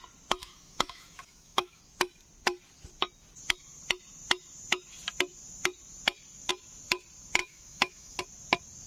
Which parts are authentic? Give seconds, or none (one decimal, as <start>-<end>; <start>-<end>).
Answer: 0.0-0.4; 1.8-7.4; 8.2-8.9